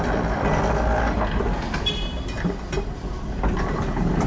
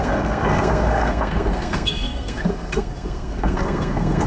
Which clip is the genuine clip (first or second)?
first